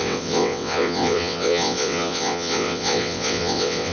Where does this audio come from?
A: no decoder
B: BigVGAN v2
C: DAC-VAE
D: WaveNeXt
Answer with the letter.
D